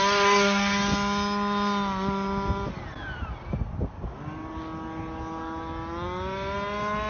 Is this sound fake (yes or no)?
no